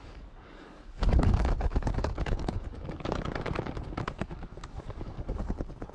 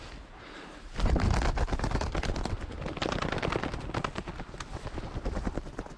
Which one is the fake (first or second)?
first